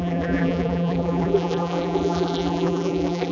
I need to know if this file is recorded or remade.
remade